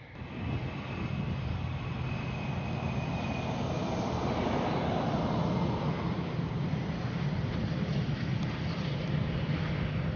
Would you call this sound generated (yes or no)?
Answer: no